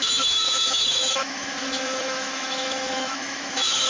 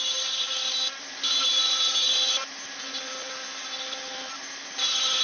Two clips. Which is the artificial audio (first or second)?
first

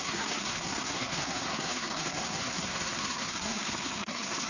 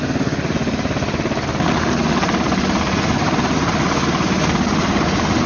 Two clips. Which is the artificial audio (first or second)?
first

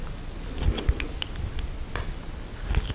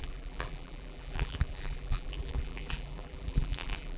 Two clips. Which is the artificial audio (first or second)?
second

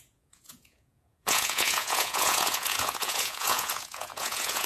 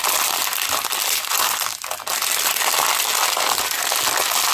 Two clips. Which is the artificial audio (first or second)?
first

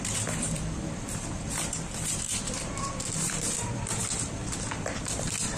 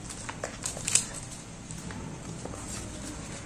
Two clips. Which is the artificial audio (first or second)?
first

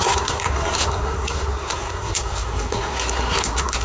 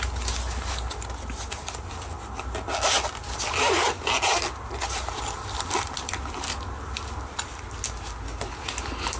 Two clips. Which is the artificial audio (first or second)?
first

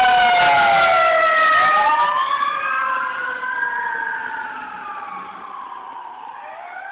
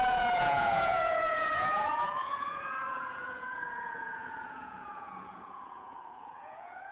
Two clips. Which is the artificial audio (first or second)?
second